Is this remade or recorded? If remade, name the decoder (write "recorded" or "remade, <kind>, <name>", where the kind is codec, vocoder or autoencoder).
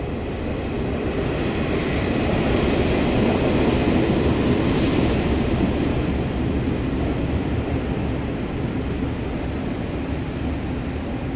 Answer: recorded